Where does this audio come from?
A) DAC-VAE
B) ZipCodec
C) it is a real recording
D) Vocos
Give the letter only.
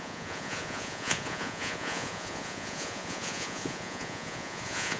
D